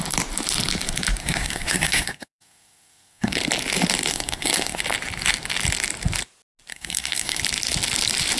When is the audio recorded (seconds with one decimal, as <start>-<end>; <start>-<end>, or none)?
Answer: 0.0-1.2; 3.4-4.1; 4.8-6.7; 7.4-8.4